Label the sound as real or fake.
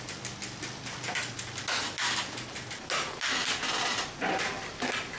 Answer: real